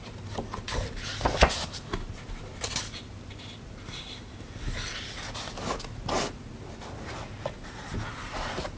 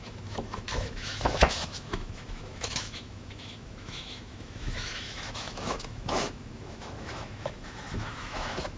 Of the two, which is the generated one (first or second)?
second